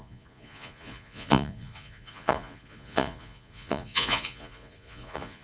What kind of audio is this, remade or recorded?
remade